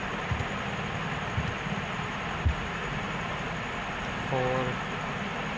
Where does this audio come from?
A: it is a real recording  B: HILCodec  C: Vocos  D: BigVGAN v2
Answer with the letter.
A